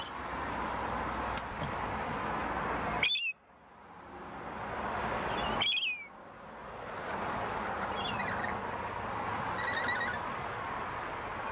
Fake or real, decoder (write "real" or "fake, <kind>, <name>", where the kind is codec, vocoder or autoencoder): real